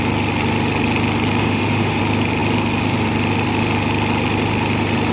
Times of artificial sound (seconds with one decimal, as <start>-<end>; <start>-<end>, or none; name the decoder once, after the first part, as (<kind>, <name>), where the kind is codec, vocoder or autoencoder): 1.4-2.0 (autoencoder, DAC-VAE)